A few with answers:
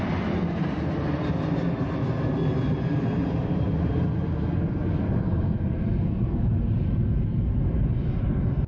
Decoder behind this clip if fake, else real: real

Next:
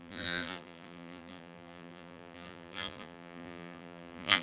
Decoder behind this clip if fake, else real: fake, vocoder, BigVGAN v2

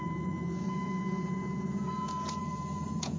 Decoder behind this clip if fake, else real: fake, vocoder, Vocos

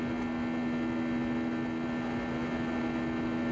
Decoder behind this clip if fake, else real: real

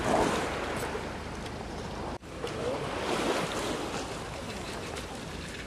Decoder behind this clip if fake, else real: fake, vocoder, BigVGAN v2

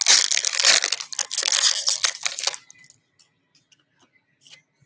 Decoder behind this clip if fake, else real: real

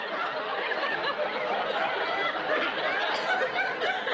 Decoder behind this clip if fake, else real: real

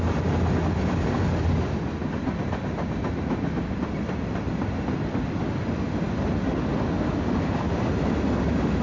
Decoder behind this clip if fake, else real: real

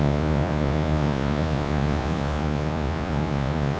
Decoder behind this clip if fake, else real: fake, vocoder, Vocos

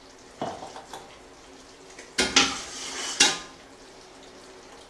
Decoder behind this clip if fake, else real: real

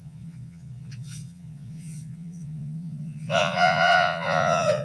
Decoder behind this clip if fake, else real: fake, vocoder, Vocos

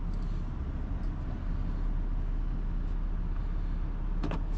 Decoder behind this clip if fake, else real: real